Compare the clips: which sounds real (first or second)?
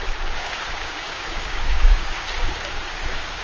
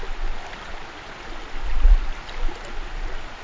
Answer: second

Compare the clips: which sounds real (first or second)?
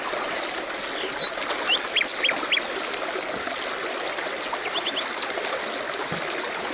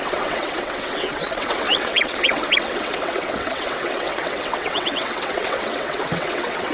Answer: first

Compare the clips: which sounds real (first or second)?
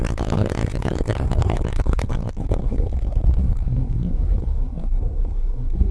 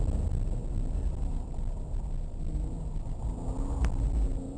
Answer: second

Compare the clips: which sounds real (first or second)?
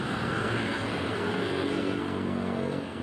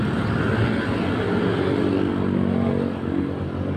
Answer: second